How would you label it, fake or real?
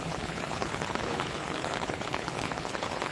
fake